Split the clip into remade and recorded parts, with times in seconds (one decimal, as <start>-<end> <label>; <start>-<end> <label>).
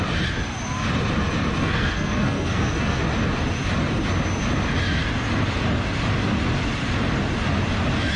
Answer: 0.0-1.6 recorded; 1.6-3.0 remade; 3.0-8.2 recorded